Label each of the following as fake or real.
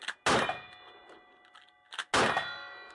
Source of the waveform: real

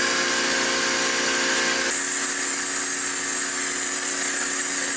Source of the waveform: real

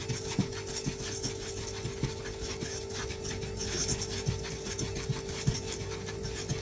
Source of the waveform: real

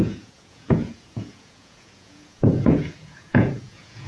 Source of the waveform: fake